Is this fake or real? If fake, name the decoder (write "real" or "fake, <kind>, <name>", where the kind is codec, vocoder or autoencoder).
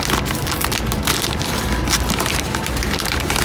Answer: fake, vocoder, BigVGAN v2